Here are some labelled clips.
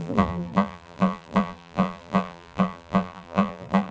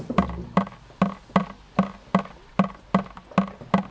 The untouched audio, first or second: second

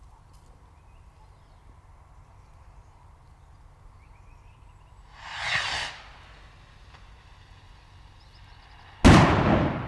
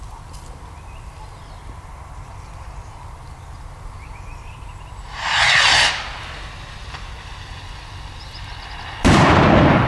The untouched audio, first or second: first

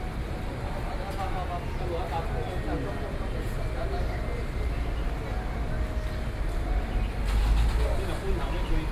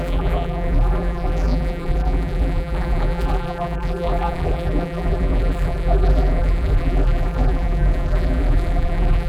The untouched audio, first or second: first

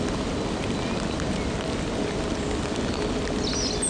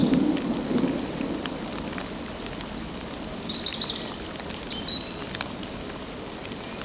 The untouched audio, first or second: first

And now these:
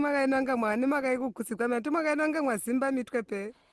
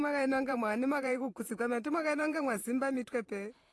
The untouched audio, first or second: first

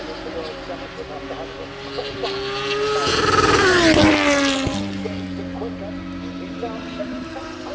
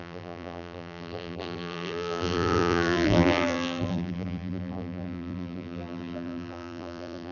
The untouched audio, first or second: first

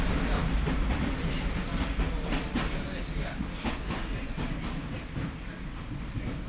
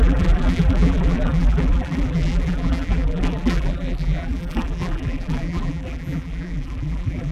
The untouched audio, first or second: first